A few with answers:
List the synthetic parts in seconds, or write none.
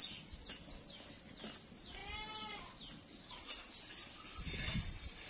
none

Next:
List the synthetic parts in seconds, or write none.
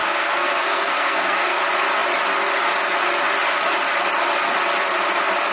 0.0-1.6 (codec, SNAC)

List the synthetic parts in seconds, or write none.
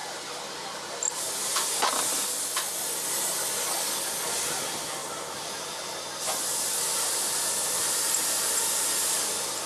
none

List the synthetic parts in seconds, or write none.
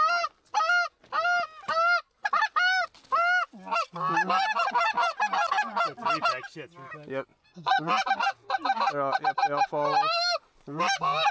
7.3-7.9 (vocoder, Vocos)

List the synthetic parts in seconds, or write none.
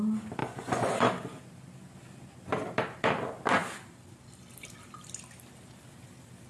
0.4-1.1 (vocoder, Vocos)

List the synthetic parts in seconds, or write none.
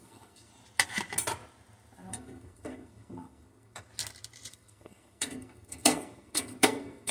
0.0-0.5 (codec, SNAC); 2.1-3.9; 4.5-7.1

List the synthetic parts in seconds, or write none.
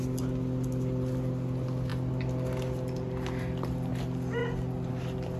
none